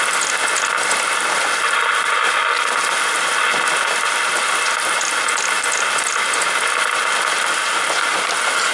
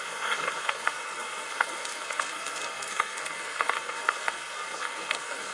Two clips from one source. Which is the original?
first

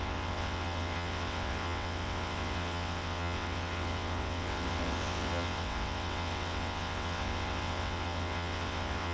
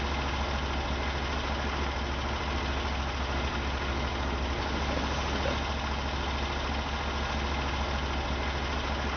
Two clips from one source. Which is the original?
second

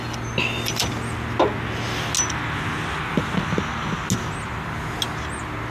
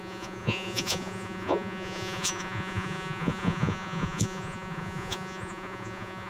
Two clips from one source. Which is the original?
first